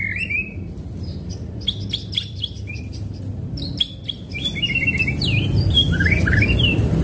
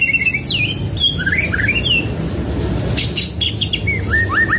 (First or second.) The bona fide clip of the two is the second